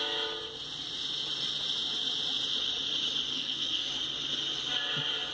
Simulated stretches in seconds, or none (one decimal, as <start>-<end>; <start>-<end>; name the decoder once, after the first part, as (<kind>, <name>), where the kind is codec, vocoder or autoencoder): 3.3-3.9 (codec, SNAC)